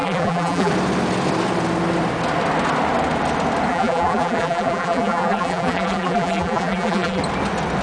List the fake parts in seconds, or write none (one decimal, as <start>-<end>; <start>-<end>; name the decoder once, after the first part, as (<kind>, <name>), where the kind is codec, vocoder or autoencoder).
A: 0.0-0.7 (vocoder, BigVGAN v2); 3.7-7.2

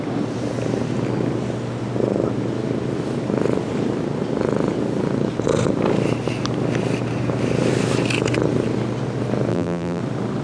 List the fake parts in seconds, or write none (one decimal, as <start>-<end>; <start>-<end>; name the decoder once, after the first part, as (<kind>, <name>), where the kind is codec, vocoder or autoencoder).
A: 9.5-10.0 (vocoder, BigVGAN v2)